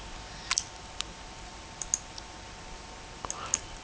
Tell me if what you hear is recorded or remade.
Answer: remade